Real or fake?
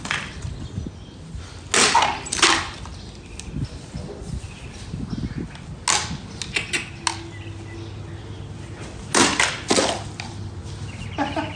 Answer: real